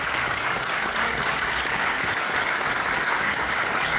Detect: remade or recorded remade